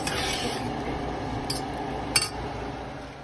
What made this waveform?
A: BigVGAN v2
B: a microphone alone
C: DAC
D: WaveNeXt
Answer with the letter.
B